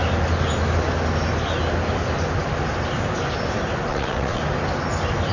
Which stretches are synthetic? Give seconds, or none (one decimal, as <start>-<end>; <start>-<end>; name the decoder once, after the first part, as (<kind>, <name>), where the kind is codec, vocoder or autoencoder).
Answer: 3.9-4.4 (vocoder, WaveNeXt)